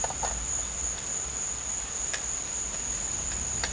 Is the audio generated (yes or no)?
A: no